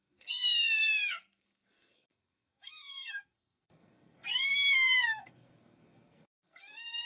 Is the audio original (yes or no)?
no